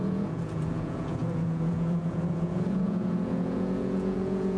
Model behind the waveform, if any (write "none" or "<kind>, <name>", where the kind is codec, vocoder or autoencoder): vocoder, Vocos